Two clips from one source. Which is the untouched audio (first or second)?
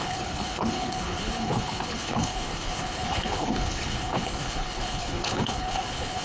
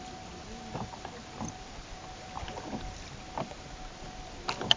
second